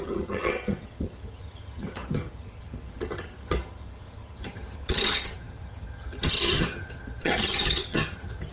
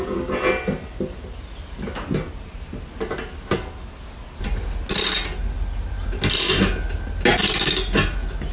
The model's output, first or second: first